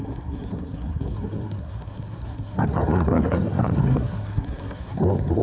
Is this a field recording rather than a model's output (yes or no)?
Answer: no